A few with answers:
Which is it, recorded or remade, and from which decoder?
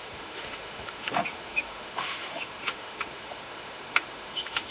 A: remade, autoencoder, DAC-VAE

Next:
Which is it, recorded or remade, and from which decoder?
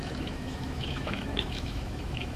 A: remade, autoencoder, DAC-VAE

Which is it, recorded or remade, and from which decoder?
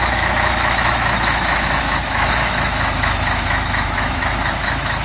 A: remade, autoencoder, DAC-VAE